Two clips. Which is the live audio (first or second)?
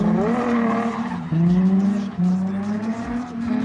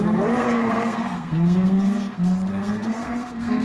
first